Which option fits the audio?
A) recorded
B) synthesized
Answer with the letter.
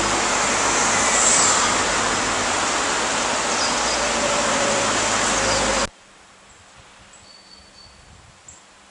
A